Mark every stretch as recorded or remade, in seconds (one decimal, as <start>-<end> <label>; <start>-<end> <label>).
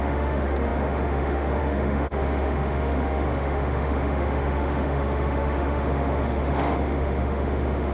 0.0-7.9 remade